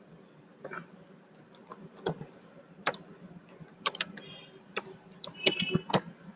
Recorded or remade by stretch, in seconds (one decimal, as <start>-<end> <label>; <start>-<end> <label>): 0.0-1.6 recorded; 1.6-5.4 remade; 5.4-6.4 recorded